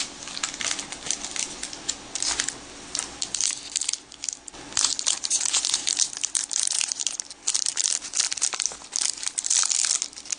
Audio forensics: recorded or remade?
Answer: recorded